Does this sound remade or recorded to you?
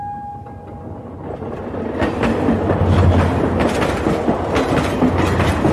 recorded